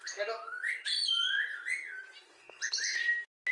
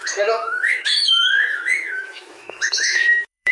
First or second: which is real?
first